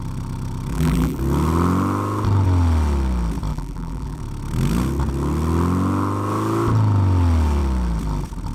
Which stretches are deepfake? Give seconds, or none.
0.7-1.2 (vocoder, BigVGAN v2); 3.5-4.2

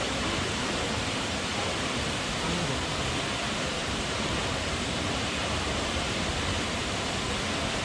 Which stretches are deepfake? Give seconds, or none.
3.8-5.8 (vocoder, BigVGAN v2)

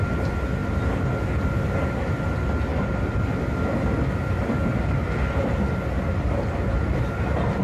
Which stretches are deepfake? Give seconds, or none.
none

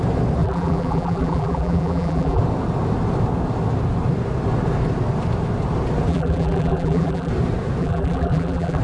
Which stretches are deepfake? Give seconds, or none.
0.4-2.4 (vocoder, BigVGAN v2); 6.1-7.3; 7.8-8.8

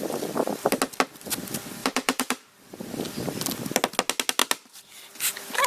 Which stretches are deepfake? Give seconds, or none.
1.8-2.8 (vocoder, BigVGAN v2)